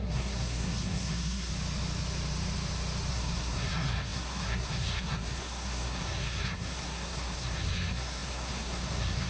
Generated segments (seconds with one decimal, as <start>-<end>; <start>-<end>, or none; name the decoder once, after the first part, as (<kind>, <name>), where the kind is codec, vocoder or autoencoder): 0.0-1.5 (codec, SNAC); 3.1-9.3